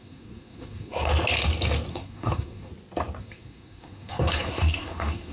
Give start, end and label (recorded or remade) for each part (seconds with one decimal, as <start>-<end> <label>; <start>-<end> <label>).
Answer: 0.0-1.1 remade; 1.1-1.9 recorded; 1.9-2.7 remade; 2.7-3.2 recorded; 3.2-5.3 remade